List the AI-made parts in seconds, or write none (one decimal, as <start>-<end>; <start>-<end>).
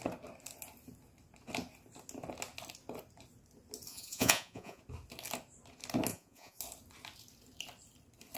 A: 3.9-4.8; 6.1-6.6